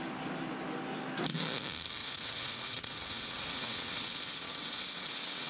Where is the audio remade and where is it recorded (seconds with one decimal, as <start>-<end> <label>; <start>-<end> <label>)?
0.0-2.0 recorded; 2.0-5.5 remade